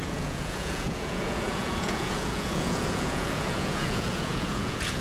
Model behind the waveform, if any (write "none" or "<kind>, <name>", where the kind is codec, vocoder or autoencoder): vocoder, Vocos